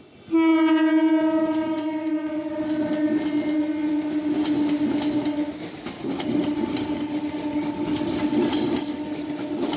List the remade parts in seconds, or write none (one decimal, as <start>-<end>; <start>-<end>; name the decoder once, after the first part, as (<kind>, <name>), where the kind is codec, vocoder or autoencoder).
none